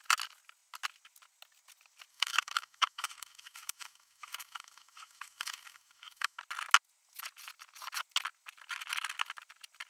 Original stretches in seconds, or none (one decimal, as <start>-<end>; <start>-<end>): 0.0-2.1; 6.4-9.9